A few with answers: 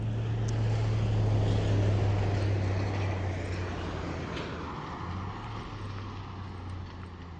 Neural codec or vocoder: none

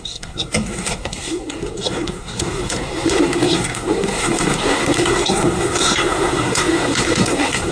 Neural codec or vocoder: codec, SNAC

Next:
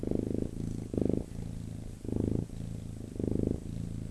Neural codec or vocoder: none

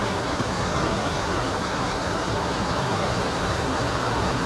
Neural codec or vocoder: codec, SNAC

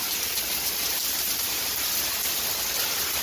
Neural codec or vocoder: none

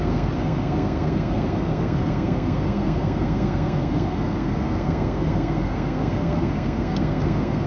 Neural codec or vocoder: codec, SNAC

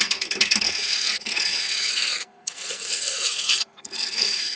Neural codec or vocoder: codec, SNAC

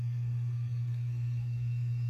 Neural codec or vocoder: codec, SNAC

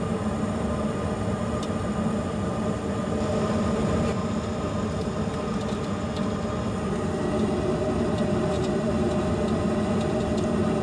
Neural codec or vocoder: none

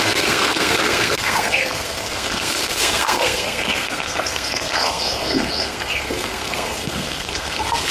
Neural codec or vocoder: codec, SNAC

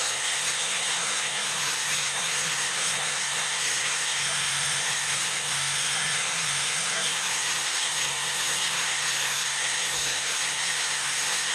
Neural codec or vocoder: codec, SNAC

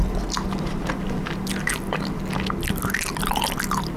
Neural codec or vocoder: none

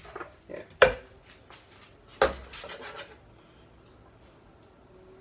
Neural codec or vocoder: none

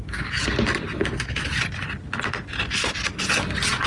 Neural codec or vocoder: none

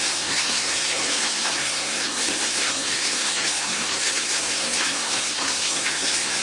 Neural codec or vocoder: codec, SNAC